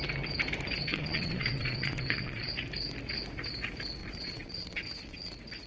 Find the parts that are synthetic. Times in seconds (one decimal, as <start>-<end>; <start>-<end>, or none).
0.9-2.5; 4.0-5.3